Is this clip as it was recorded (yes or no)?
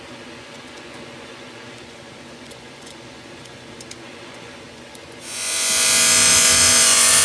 no